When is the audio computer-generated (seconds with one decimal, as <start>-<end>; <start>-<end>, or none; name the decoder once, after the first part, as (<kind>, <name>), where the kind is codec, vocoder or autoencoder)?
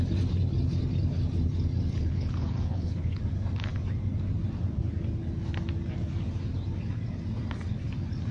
2.0-3.2 (codec, HILCodec)